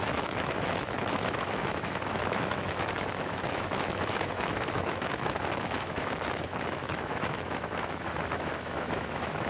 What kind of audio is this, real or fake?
fake